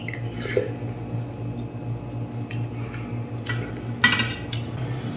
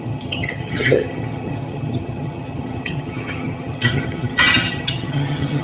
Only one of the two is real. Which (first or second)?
first